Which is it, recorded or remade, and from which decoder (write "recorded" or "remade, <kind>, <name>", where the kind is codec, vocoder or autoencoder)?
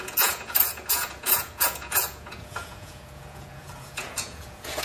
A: remade, vocoder, Vocos